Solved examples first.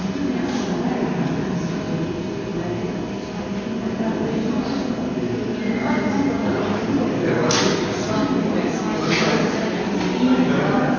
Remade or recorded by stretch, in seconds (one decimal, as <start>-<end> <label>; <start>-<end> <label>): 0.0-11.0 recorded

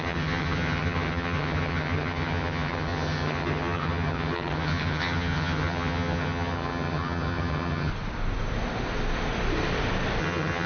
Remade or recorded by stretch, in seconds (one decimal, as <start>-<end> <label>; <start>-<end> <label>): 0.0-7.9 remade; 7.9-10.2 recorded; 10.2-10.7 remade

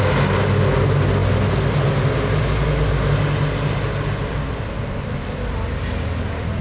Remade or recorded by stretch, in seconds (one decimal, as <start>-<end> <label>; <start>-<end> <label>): 0.0-6.6 recorded